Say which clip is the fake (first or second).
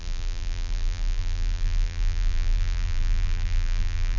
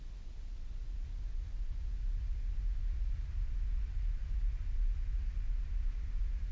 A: first